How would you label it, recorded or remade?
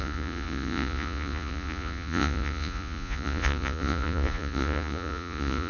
remade